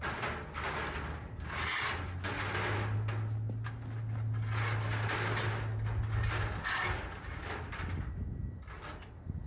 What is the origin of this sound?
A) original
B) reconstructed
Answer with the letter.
A